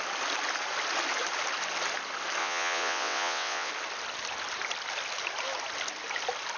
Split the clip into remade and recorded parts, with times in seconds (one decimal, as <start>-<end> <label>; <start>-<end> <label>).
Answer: 0.0-2.4 recorded; 2.4-3.7 remade; 3.7-6.6 recorded